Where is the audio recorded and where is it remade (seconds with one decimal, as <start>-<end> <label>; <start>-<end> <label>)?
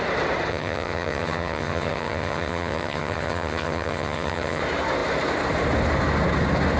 0.0-0.5 recorded; 0.5-4.6 remade; 4.6-6.8 recorded